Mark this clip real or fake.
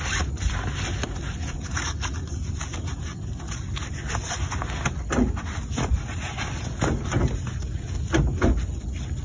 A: real